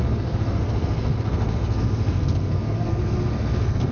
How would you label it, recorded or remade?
remade